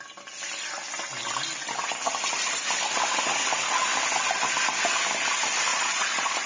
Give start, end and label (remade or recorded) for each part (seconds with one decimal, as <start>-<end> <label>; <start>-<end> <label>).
0.0-5.7 recorded; 5.7-6.5 remade